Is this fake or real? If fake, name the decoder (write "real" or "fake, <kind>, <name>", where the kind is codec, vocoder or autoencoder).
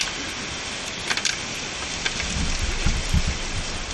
real